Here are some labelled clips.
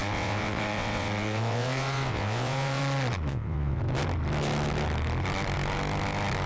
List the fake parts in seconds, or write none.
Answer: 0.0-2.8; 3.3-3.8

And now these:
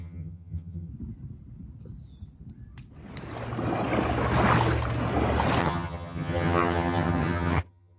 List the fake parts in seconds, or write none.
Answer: 0.0-0.9; 5.6-8.0

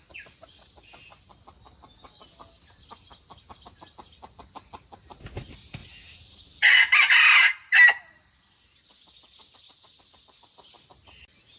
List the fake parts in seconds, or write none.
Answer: none

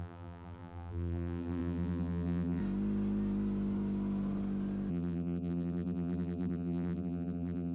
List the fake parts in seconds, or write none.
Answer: 0.0-2.6; 4.9-7.7

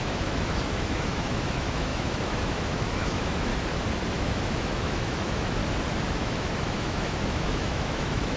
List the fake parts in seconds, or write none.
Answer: 0.0-3.5; 4.1-5.6; 6.1-8.4

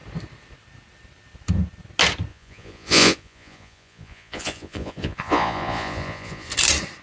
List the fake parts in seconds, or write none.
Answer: 2.3-6.5